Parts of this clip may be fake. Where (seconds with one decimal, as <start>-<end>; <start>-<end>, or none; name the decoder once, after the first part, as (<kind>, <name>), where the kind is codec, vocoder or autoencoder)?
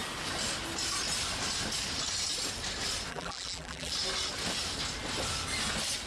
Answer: 3.1-3.9 (vocoder, BigVGAN v2)